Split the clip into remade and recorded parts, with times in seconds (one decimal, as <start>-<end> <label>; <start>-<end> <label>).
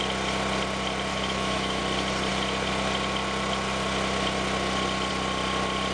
0.0-1.1 recorded; 1.1-1.8 remade; 1.8-5.9 recorded